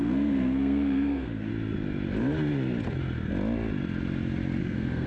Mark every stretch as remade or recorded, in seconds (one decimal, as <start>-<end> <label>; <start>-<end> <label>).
0.0-1.5 remade; 1.5-4.6 recorded; 4.6-5.1 remade